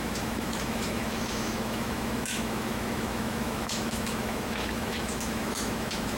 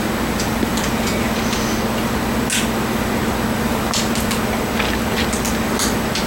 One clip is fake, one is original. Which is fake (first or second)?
first